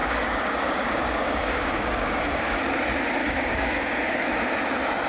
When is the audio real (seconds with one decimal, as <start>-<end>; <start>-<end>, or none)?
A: 2.6-3.2; 4.3-5.1